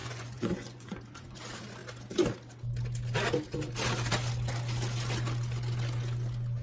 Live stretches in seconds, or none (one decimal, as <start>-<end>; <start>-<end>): 1.4-6.6

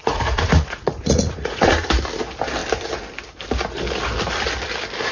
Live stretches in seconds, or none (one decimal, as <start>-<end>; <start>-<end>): 1.9-5.1

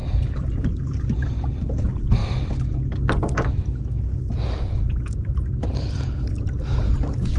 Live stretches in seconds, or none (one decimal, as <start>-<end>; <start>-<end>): 1.0-7.4

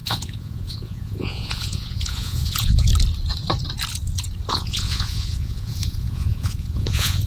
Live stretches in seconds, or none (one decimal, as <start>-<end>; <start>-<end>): 2.9-4.5

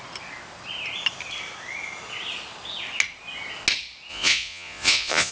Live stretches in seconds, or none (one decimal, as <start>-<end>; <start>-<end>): 0.0-4.1